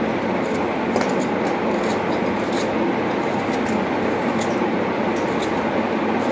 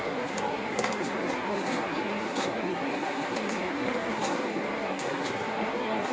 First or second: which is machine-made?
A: second